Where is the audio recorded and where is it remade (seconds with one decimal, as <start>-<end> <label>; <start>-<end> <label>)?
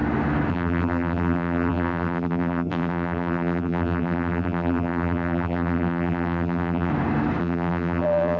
0.0-0.5 recorded; 0.5-6.9 remade; 6.9-7.4 recorded; 7.4-8.4 remade